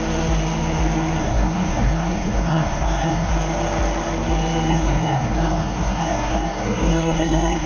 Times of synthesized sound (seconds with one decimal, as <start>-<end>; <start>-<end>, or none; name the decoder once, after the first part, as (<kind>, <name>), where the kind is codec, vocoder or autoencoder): 1.2-3.3 (codec, SNAC); 4.7-7.7